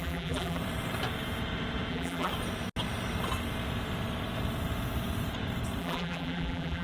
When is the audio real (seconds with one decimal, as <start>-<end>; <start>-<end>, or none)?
0.6-1.9; 2.3-5.8